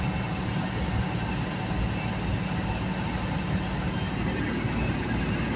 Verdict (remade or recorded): recorded